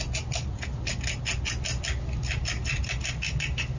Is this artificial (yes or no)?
no